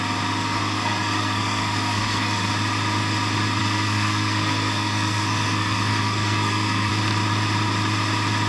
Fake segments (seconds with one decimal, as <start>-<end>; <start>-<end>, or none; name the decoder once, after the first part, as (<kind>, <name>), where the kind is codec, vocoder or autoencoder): 0.4-2.5 (codec, SNAC); 3.6-6.9